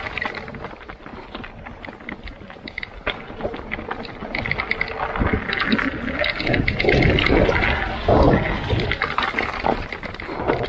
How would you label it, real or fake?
real